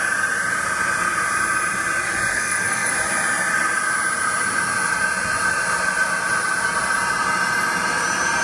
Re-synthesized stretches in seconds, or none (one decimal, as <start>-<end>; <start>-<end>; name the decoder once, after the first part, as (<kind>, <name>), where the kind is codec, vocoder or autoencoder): 2.3-2.9 (codec, SNAC)